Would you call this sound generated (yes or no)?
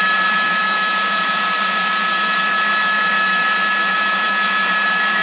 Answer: yes